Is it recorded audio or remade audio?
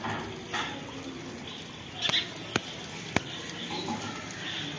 recorded